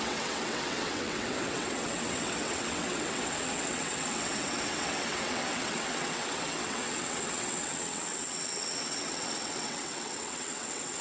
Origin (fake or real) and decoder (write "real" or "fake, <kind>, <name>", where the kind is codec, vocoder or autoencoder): fake, vocoder, WaveNeXt